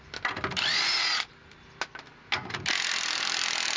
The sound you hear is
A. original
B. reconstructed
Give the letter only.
A